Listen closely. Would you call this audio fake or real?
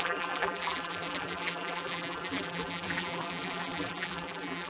fake